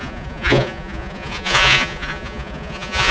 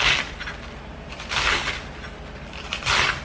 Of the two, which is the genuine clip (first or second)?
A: second